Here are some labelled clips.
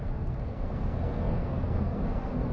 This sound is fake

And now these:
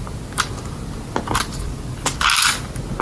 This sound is real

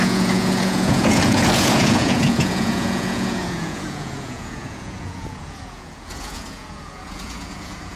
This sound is fake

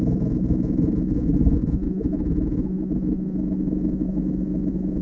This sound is fake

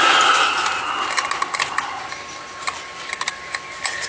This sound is real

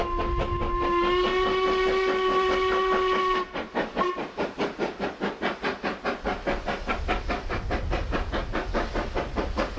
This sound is real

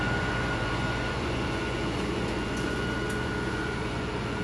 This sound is fake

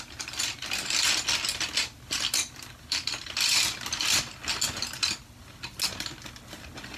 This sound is real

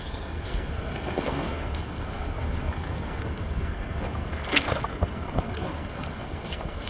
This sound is fake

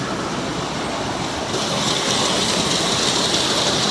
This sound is real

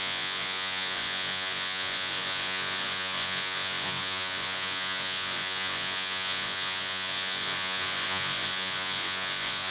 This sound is fake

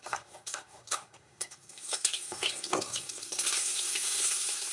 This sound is fake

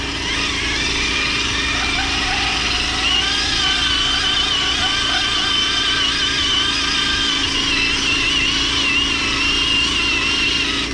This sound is real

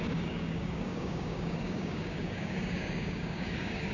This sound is fake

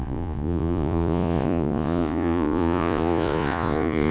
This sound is fake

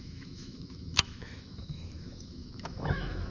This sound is fake